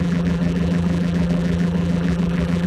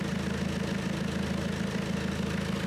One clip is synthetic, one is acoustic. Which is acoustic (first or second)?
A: second